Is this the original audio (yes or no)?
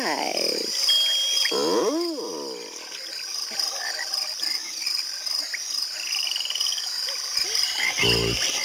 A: yes